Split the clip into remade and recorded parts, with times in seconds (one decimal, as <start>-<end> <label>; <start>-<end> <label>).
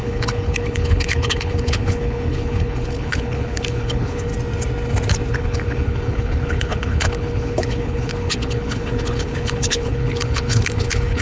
0.0-4.3 remade; 4.3-5.3 recorded; 5.3-11.2 remade